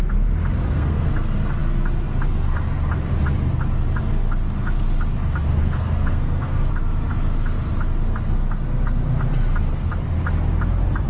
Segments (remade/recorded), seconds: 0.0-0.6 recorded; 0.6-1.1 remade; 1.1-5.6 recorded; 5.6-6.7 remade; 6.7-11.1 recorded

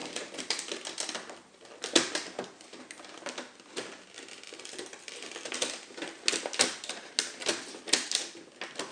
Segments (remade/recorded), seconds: 0.0-8.9 recorded

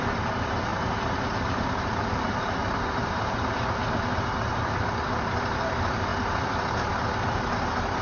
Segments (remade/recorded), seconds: 0.0-3.8 remade; 3.8-4.5 recorded; 4.5-6.1 remade; 6.1-6.8 recorded; 6.8-8.0 remade

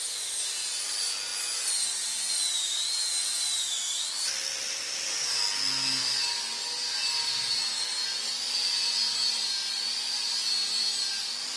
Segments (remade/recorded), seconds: 0.0-11.6 recorded

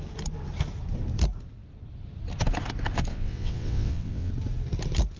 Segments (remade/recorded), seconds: 0.0-3.1 recorded; 3.1-4.3 remade; 4.3-5.2 recorded

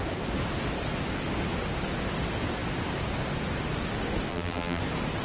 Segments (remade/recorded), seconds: 0.0-4.3 recorded; 4.3-4.8 remade; 4.8-5.2 recorded

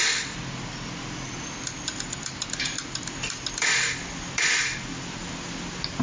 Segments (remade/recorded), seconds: 0.0-6.0 recorded